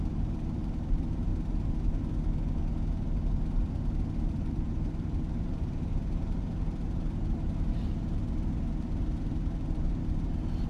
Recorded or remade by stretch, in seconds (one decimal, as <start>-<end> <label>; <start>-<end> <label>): 0.0-1.3 remade; 1.3-4.3 recorded; 4.3-10.7 remade